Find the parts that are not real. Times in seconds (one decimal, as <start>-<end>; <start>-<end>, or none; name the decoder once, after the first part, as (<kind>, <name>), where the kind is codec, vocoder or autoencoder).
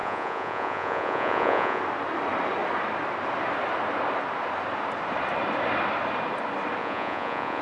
0.0-1.8 (vocoder, Vocos); 6.8-7.6